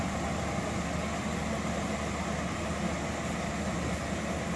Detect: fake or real real